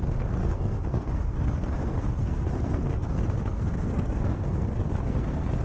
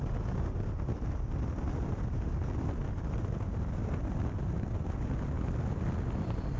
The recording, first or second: second